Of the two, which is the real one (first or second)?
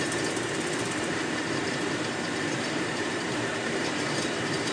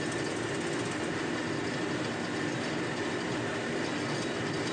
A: second